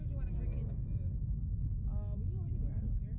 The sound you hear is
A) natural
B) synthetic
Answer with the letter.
A